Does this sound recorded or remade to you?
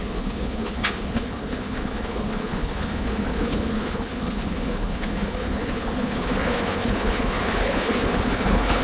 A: remade